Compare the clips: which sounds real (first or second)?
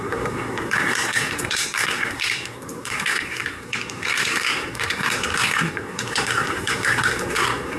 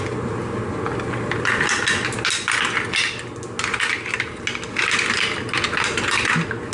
second